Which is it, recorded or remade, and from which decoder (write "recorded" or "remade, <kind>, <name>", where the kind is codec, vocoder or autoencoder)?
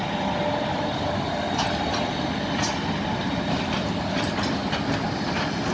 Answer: recorded